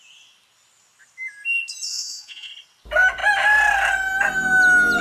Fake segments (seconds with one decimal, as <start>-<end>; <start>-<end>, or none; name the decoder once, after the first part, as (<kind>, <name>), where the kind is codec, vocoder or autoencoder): 1.9-2.5 (vocoder, Vocos)